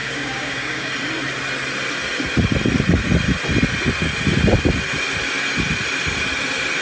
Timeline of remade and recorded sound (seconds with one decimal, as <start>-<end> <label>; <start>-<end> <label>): 0.0-0.9 remade; 0.9-6.8 recorded